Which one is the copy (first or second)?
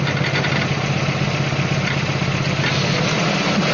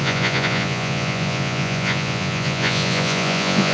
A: second